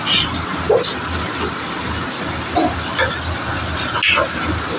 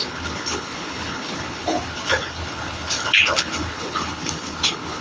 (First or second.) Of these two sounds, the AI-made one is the second